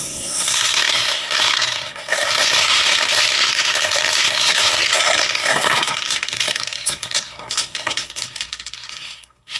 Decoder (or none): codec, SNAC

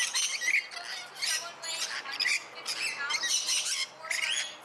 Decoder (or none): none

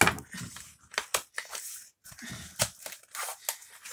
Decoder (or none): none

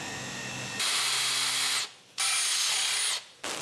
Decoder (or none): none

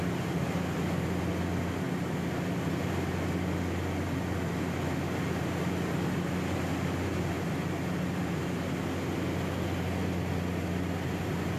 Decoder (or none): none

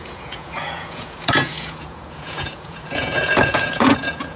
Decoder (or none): vocoder, Vocos